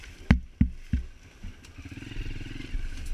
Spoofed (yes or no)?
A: no